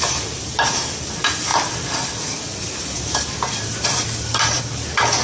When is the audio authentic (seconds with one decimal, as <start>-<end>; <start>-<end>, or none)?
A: 0.0-1.5; 4.6-5.2